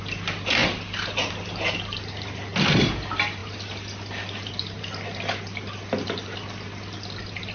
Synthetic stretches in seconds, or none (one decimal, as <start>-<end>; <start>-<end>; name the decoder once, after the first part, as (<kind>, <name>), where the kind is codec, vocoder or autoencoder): 3.4-4.8 (vocoder, BigVGAN v2)